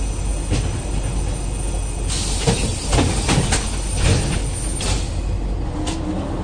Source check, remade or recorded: recorded